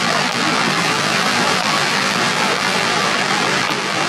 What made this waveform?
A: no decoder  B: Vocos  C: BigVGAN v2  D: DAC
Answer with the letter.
C